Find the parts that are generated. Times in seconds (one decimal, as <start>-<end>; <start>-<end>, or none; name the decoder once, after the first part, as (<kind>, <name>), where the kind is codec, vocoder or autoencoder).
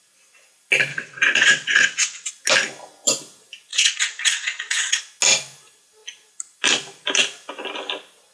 0.9-2.3 (vocoder, WaveNeXt); 3.7-5.0